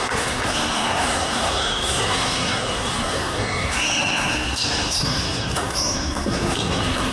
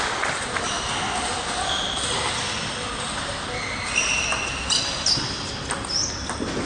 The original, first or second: second